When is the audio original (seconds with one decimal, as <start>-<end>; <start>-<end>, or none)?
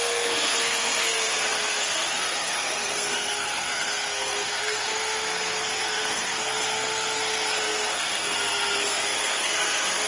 none